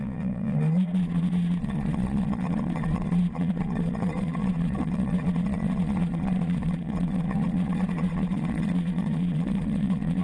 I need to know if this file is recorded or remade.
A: remade